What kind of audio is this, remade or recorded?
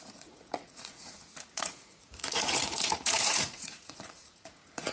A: remade